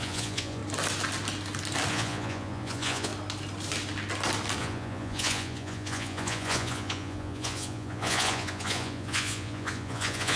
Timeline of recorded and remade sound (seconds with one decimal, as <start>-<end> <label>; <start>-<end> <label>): 0.0-0.6 remade; 0.6-1.9 recorded; 1.9-3.1 remade; 3.1-4.6 recorded; 4.6-10.4 remade